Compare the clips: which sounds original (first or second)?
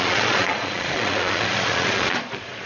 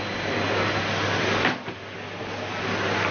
second